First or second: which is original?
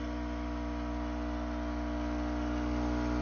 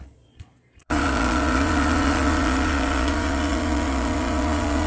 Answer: first